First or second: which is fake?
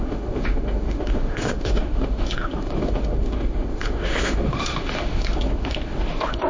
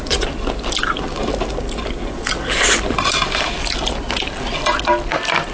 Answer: first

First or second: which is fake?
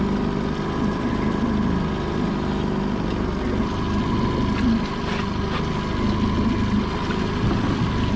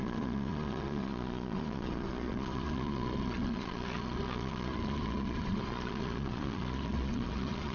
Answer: second